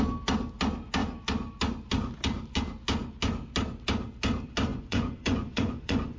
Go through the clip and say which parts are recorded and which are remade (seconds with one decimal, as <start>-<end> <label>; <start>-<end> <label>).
0.0-4.7 recorded; 4.7-6.2 remade